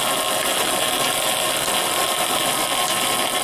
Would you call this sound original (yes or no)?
yes